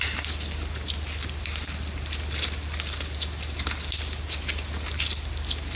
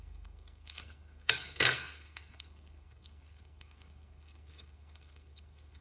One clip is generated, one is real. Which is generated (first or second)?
second